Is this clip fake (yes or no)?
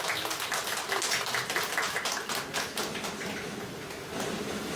no